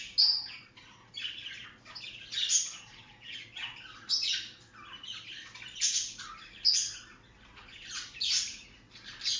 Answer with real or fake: real